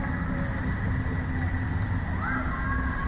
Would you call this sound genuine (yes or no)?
yes